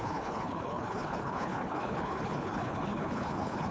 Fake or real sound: fake